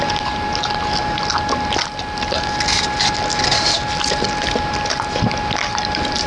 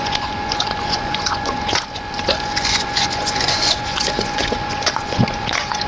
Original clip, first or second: first